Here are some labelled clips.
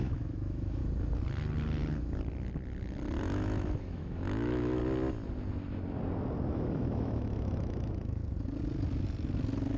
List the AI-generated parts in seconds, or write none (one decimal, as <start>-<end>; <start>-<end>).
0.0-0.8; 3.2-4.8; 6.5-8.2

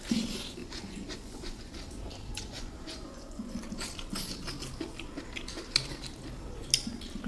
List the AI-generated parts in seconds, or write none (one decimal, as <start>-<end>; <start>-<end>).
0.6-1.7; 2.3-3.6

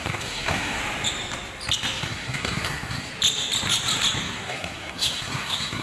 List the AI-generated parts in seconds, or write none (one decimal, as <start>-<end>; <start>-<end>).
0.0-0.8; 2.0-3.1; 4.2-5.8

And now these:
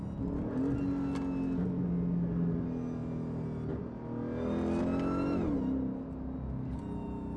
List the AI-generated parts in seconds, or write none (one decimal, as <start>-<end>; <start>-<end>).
none

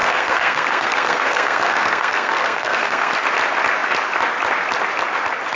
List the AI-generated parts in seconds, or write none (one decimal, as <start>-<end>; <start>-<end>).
0.0-3.1